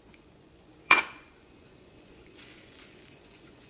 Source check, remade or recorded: remade